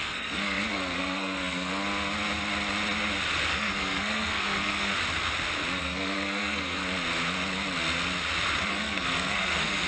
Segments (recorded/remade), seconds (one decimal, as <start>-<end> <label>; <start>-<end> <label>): 0.0-1.7 remade; 1.7-3.5 recorded; 3.5-4.9 remade; 4.9-5.8 recorded; 5.8-6.8 remade; 6.8-8.7 recorded; 8.7-9.9 remade